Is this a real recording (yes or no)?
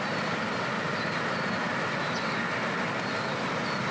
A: yes